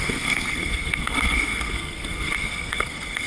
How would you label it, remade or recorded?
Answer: remade